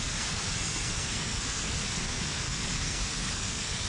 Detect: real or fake fake